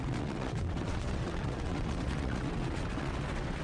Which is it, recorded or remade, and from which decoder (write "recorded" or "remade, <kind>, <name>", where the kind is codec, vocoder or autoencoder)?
remade, vocoder, WaveNeXt